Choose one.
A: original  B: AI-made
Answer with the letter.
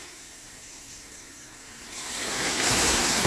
B